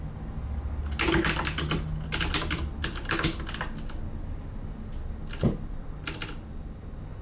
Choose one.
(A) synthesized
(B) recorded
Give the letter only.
B